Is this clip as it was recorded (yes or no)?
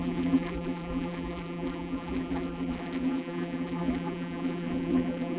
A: no